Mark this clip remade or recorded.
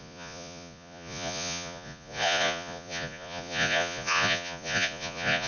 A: remade